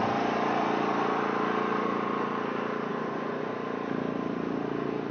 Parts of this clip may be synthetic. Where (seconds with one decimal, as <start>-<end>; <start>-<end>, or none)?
2.9-3.5